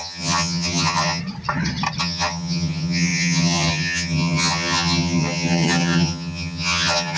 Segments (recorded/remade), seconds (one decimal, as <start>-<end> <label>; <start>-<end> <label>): 0.0-1.2 remade; 1.2-2.0 recorded; 2.0-7.2 remade

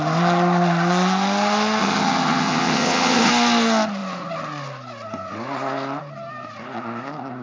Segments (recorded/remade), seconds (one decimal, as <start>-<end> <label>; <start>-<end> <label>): 0.0-1.8 recorded; 1.8-3.3 remade; 3.3-7.4 recorded

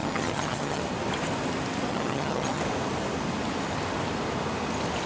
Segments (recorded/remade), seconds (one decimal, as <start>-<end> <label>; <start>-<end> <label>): 0.0-0.8 remade; 0.8-1.9 recorded; 1.9-2.6 remade; 2.6-5.1 recorded

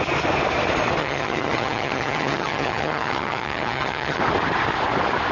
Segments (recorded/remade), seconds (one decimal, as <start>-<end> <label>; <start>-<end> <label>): 0.0-1.0 recorded; 1.0-4.2 remade; 4.2-5.3 recorded

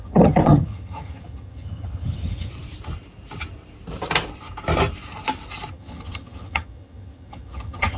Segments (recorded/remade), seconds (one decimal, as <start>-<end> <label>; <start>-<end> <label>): 0.0-2.5 remade; 2.5-5.7 recorded; 5.7-8.0 remade

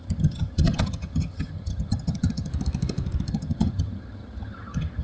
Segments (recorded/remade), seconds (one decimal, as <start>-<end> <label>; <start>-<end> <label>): 0.0-2.5 remade; 2.5-3.3 recorded; 3.3-5.0 remade